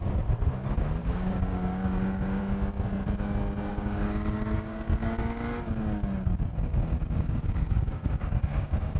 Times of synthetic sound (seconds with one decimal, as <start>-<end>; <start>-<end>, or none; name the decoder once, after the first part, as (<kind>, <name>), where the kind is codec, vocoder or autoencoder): 1.0-2.4 (codec, DAC); 3.7-9.0